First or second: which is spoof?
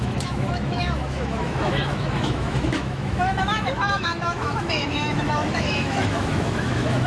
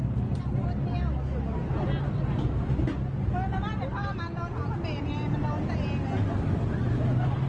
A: first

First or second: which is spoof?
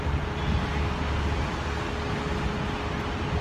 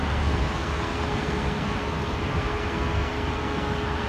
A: second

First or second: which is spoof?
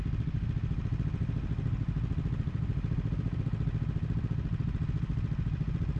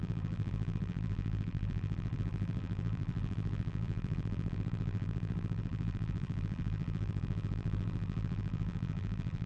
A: second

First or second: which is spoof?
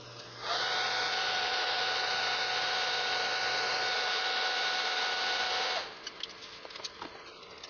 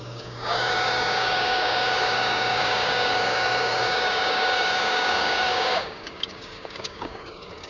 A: second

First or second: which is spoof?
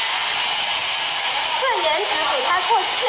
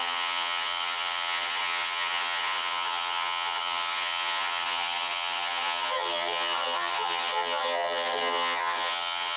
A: second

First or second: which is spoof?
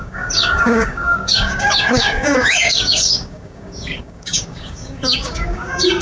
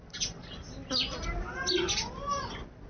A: first